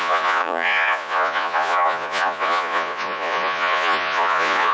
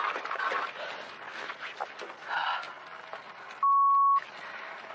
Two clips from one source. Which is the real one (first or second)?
second